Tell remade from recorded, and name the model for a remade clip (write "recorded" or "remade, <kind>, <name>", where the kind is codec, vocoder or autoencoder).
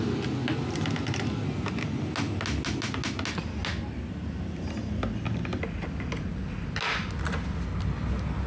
recorded